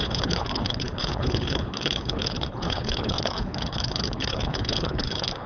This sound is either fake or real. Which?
fake